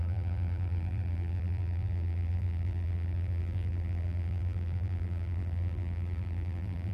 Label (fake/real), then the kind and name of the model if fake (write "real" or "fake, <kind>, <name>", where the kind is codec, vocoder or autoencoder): fake, vocoder, BigVGAN v2